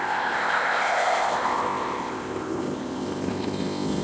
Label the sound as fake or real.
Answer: fake